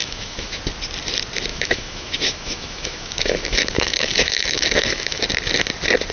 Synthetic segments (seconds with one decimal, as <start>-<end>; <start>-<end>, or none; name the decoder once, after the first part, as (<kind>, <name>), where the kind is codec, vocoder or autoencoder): 0.0-0.6 (autoencoder, DAC-VAE); 1.5-5.2